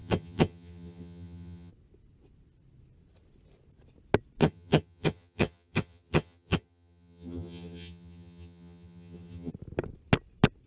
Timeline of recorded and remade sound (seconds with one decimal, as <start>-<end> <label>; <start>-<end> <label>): 0.0-1.7 remade; 1.7-4.4 recorded; 4.4-9.5 remade; 9.5-10.7 recorded